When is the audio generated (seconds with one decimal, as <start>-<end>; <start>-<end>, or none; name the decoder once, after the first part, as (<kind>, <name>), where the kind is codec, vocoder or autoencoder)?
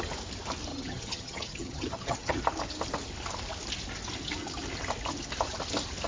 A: 0.7-2.4 (vocoder, HiFi-GAN)